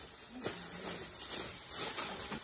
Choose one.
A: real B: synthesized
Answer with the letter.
A